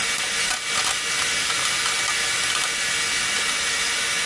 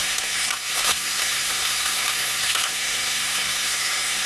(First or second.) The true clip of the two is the first